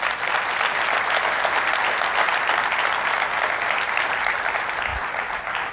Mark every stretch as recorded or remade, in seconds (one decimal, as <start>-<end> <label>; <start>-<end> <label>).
0.0-5.7 recorded